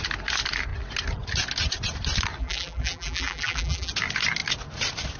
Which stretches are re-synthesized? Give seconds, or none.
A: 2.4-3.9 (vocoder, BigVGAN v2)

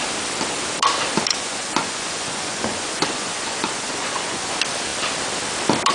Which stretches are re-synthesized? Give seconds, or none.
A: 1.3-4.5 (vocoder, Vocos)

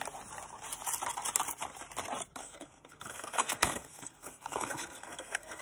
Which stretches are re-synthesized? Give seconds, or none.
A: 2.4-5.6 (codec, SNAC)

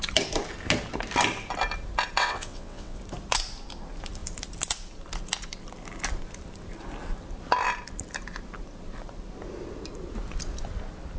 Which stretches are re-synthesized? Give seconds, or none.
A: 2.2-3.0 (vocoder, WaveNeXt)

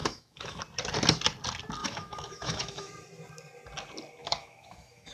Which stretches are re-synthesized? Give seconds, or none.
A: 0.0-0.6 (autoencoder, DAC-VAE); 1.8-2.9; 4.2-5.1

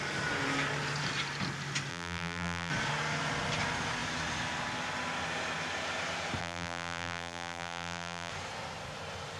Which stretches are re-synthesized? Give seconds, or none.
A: 1.9-2.7 (vocoder, BigVGAN v2); 6.4-8.3

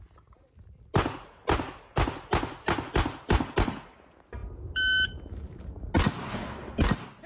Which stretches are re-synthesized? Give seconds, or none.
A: none